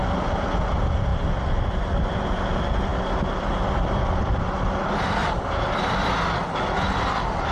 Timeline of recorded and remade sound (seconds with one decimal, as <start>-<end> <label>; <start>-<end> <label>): 0.0-2.9 recorded; 2.9-4.4 remade; 4.4-5.2 recorded; 5.2-6.3 remade; 6.3-7.5 recorded